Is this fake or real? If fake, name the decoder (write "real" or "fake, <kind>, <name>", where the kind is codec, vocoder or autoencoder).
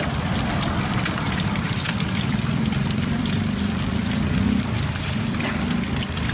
fake, vocoder, BigVGAN v2